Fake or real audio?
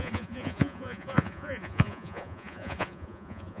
fake